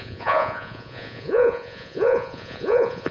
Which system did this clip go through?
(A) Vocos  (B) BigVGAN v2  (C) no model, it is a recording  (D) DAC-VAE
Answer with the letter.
A